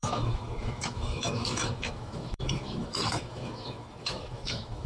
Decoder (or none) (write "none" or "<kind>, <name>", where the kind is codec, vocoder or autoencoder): autoencoder, DAC-VAE